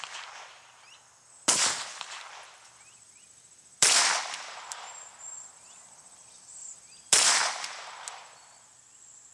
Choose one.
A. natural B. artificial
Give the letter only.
A